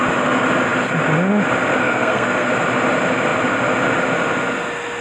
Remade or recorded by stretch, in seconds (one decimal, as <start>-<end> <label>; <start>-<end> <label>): 0.0-1.8 recorded; 1.8-2.5 remade; 2.5-5.0 recorded

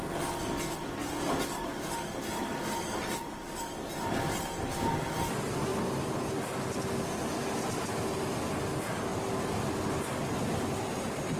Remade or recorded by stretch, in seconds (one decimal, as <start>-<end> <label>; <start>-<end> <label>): 0.0-11.4 recorded